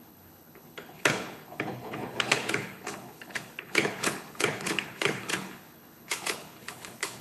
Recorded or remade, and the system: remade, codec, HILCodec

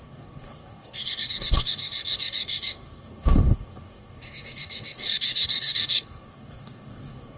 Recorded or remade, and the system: remade, codec, DAC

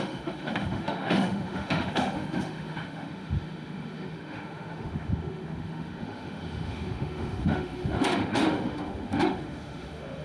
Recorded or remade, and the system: remade, autoencoder, DAC-VAE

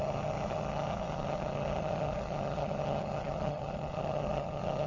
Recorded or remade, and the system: remade, vocoder, HiFi-GAN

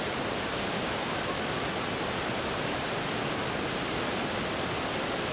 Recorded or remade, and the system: recorded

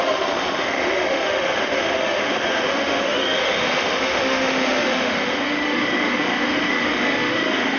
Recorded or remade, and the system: remade, autoencoder, DAC-VAE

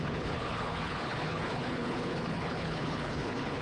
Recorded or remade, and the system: remade, codec, HILCodec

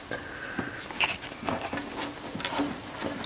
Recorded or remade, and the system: recorded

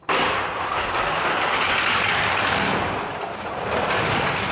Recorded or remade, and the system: recorded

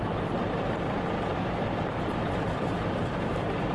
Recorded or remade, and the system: remade, vocoder, BigVGAN v2